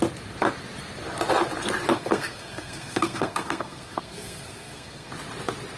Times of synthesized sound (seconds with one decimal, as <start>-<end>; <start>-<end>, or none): 1.9-5.1